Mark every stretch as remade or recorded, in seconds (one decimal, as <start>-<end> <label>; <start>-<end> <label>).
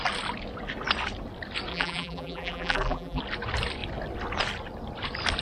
0.0-1.7 recorded; 1.7-3.2 remade; 3.2-5.4 recorded